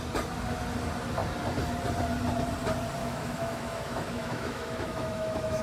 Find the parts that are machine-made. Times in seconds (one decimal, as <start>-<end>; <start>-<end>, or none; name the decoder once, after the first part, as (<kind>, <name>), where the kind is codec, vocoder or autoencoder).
3.0-5.6 (autoencoder, DAC-VAE)